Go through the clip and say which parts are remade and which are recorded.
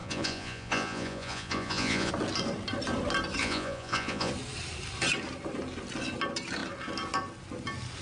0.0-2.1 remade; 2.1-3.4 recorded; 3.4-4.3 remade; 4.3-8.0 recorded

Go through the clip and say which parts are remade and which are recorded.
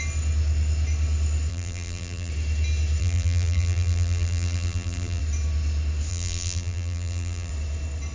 0.0-1.5 recorded; 1.5-2.3 remade; 2.3-3.0 recorded; 3.0-5.2 remade; 5.2-6.1 recorded; 6.1-7.5 remade; 7.5-8.1 recorded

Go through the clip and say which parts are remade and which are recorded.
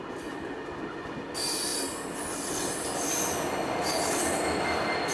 0.0-5.1 recorded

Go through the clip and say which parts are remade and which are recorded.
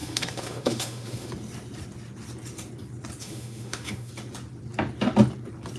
0.0-1.3 remade; 1.3-3.2 recorded; 3.2-4.1 remade; 4.1-5.8 recorded